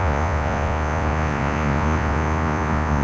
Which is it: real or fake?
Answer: fake